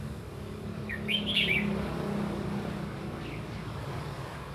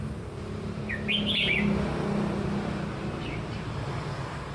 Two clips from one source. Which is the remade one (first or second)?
first